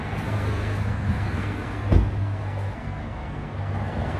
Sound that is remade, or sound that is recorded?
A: remade